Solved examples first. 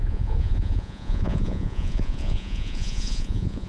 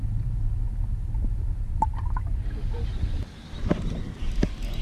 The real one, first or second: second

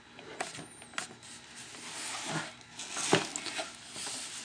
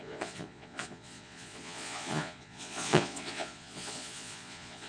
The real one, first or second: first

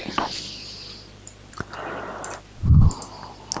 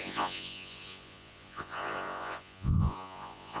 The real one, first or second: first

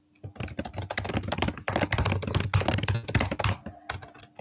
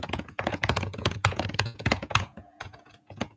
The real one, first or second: first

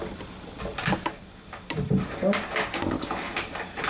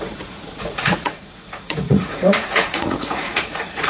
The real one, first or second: first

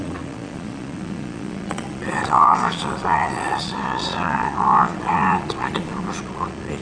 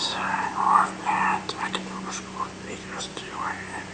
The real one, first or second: second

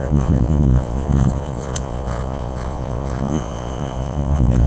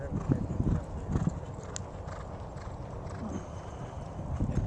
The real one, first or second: second